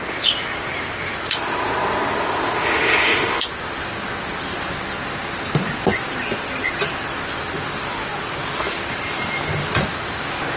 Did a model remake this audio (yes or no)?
no